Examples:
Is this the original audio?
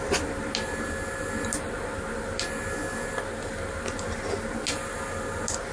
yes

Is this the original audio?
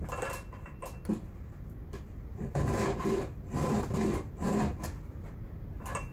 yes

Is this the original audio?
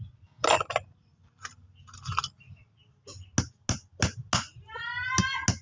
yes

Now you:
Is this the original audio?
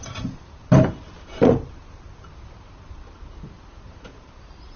no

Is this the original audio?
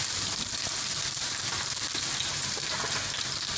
no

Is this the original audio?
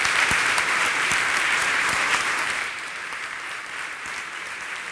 no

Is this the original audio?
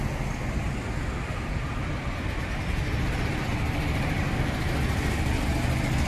yes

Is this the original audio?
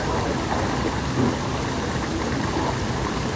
yes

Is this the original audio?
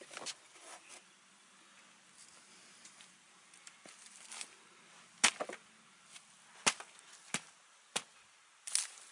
yes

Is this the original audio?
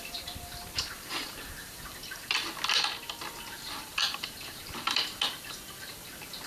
no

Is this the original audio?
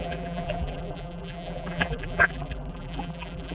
no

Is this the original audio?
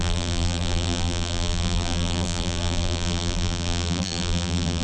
no